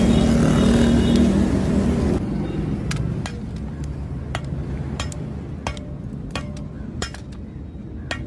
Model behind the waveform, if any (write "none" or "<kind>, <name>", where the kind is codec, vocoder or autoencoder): none